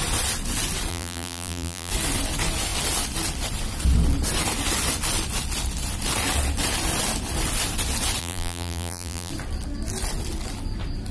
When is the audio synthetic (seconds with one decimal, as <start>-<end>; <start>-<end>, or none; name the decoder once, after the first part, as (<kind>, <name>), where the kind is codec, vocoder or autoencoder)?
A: 0.9-1.9 (vocoder, BigVGAN v2); 8.2-9.3